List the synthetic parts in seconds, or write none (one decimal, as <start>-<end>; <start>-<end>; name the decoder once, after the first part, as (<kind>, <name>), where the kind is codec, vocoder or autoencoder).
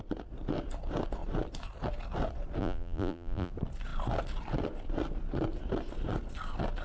2.6-3.5 (vocoder, BigVGAN v2)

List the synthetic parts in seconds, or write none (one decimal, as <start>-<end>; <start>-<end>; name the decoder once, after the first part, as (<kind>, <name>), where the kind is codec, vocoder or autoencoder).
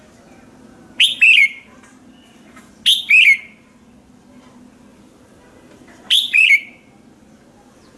1.4-2.7 (vocoder, BigVGAN v2); 4.9-6.5